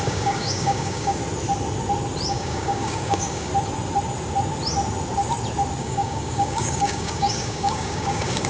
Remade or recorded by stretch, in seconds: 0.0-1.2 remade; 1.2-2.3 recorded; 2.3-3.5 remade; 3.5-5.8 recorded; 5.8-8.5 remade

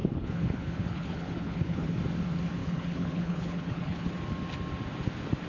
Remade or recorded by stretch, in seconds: 0.0-2.0 remade; 2.0-2.6 recorded; 2.6-4.1 remade; 4.1-5.5 recorded

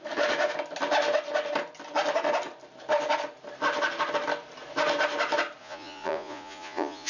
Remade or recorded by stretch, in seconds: 0.0-5.6 recorded; 5.6-7.1 remade

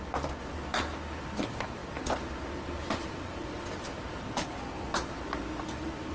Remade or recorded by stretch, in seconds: 0.0-6.1 recorded

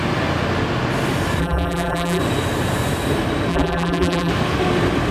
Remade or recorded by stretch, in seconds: 0.0-1.4 recorded; 1.4-2.2 remade; 2.2-3.5 recorded; 3.5-4.3 remade; 4.3-5.1 recorded

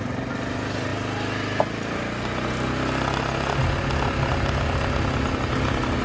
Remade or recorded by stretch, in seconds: 0.0-6.0 recorded

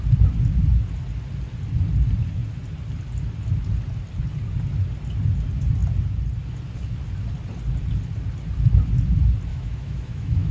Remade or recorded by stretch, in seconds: 0.0-9.5 recorded; 9.5-10.5 remade